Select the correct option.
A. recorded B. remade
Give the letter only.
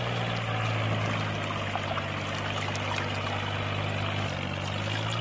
A